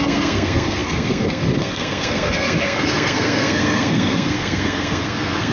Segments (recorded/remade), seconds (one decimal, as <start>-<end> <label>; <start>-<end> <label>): 0.0-5.5 remade